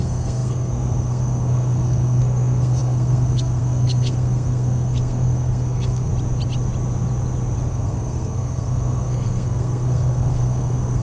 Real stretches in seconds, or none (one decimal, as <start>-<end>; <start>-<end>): 6.1-7.7